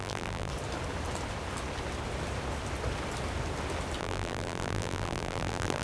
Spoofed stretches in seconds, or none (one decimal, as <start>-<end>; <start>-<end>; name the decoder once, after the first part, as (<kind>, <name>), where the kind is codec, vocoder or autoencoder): 0.0-0.5 (vocoder, BigVGAN v2); 4.0-5.8